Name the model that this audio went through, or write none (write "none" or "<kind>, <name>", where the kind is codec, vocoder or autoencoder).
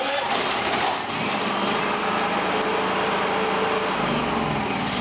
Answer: none